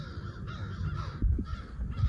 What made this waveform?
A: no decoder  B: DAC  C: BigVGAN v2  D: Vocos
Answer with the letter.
A